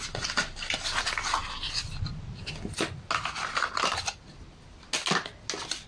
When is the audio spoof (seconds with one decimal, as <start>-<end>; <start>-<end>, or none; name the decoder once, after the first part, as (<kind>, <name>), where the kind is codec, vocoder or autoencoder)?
none